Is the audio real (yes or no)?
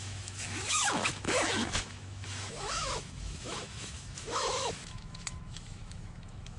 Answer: no